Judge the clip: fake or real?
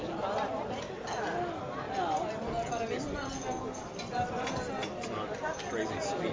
real